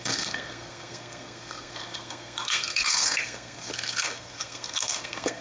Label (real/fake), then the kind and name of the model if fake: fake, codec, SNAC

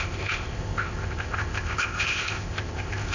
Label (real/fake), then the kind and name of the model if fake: fake, codec, ZipCodec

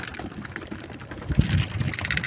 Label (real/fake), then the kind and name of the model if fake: real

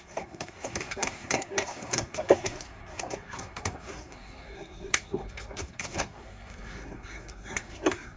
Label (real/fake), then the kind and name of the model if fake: fake, codec, SNAC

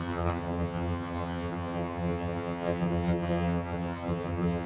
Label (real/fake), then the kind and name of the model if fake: fake, vocoder, HiFi-GAN